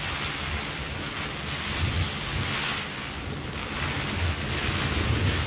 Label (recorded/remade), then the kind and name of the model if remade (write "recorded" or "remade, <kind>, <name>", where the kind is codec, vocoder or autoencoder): recorded